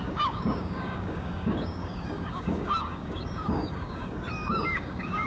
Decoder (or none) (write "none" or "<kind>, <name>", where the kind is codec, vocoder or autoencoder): codec, DAC